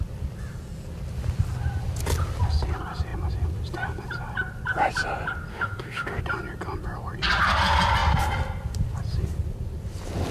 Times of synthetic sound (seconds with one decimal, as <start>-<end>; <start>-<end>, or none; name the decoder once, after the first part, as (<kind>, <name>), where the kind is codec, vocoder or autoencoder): 5.5-6.2 (autoencoder, DAC-VAE)